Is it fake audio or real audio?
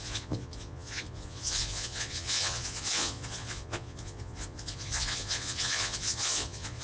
fake